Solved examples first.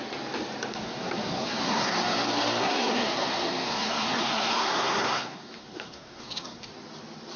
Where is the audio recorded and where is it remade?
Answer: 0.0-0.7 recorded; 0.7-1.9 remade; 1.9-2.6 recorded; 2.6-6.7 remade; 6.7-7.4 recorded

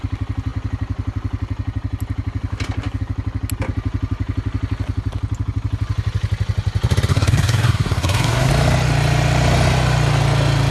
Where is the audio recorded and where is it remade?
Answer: 0.0-7.1 recorded; 7.1-8.5 remade; 8.5-10.7 recorded

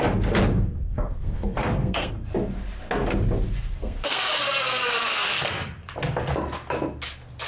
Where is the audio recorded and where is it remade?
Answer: 0.0-0.8 recorded; 0.8-2.1 remade; 2.1-3.8 recorded; 3.8-5.4 remade; 5.4-7.5 recorded

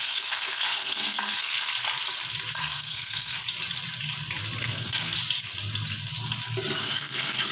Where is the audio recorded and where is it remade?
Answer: 0.0-1.7 remade; 1.7-2.6 recorded; 2.6-3.4 remade; 3.4-4.6 recorded; 4.6-5.1 remade; 5.1-6.8 recorded; 6.8-7.5 remade